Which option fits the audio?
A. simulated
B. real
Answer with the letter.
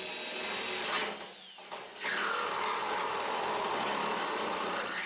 B